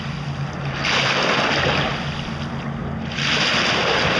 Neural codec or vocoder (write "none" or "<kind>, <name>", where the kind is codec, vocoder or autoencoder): none